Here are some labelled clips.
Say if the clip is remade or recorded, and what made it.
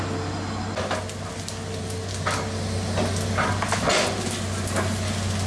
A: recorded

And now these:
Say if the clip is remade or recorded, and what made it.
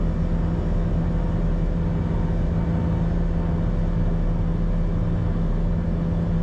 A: recorded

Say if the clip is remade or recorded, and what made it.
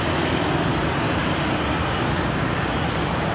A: recorded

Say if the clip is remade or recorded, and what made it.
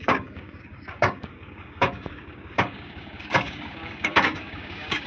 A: remade, codec, DAC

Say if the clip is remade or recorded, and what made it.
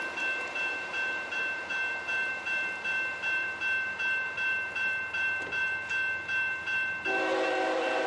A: remade, vocoder, BigVGAN v2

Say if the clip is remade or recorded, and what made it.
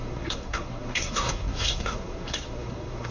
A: remade, codec, SNAC